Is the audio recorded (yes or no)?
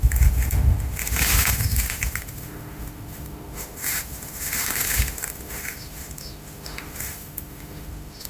no